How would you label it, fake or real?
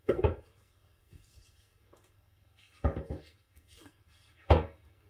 fake